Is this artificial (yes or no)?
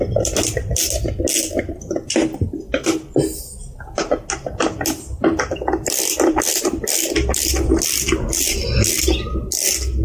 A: no